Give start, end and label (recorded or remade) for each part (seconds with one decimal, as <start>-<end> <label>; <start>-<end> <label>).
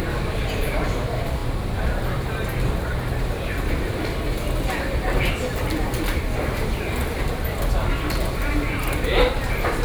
0.0-9.8 remade